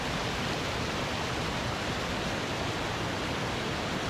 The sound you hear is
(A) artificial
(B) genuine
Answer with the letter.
B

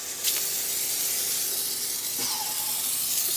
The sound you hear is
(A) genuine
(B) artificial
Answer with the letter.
A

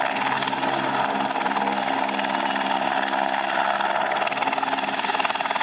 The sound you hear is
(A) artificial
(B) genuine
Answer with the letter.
B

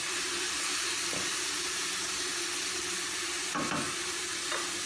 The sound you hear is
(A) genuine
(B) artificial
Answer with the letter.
A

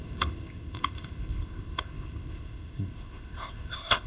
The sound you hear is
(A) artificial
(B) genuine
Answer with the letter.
A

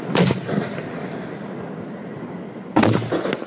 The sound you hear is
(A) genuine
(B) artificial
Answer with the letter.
A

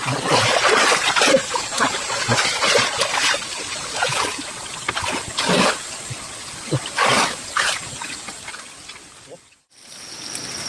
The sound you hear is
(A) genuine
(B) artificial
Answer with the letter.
B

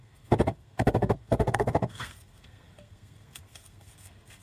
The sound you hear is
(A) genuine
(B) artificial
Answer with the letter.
B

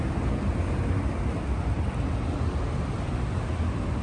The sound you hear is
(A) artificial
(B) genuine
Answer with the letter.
B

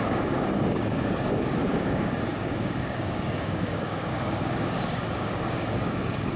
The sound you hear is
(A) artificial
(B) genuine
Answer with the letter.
A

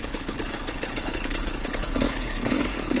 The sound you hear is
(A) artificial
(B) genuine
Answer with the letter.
A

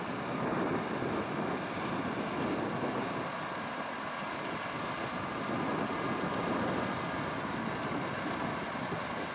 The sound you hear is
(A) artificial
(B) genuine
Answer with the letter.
B